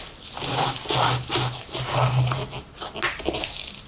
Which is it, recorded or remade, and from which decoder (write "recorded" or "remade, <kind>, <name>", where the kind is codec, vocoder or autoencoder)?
recorded